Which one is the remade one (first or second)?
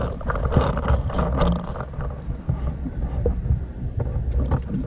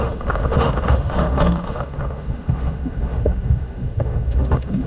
second